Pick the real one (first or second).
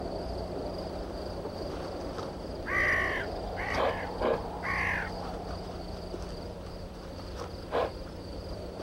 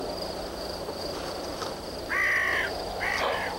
second